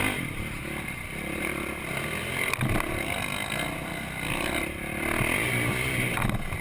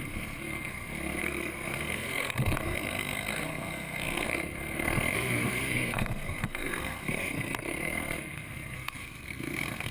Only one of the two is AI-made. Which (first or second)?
second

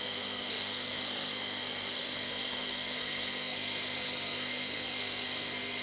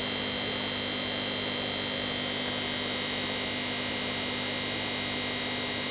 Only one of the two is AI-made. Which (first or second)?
first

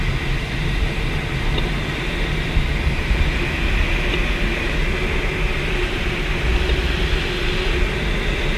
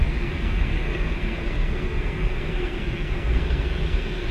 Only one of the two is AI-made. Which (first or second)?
second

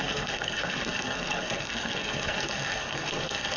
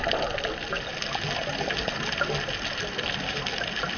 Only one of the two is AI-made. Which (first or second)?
first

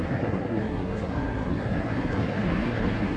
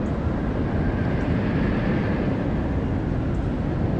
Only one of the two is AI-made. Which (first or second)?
first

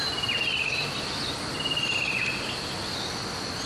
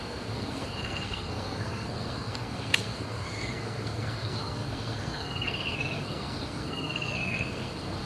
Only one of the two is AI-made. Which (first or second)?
second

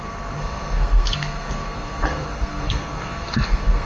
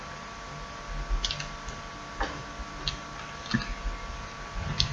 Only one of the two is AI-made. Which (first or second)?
first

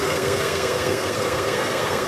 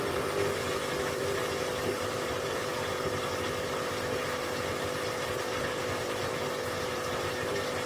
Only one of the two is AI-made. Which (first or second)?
first